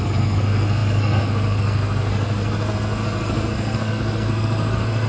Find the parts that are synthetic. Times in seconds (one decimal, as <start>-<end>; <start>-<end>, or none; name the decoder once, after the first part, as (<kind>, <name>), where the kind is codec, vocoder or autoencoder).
0.0-5.1 (codec, SNAC)